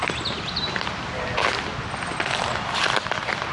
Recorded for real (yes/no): yes